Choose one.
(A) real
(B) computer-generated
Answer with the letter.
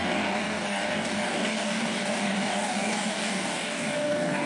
B